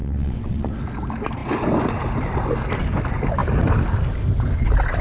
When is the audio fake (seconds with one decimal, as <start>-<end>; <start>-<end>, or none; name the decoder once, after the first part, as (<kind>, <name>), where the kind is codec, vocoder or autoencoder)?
0.0-0.7 (vocoder, WaveNeXt)